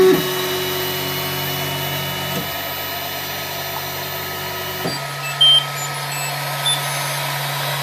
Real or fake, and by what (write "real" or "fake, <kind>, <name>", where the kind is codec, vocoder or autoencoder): real